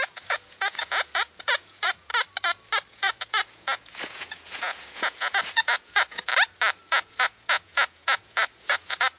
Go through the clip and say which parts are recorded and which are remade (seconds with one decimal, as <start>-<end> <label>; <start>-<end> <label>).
0.0-2.1 remade; 2.1-2.9 recorded; 2.9-6.3 remade; 6.3-6.9 recorded; 6.9-9.2 remade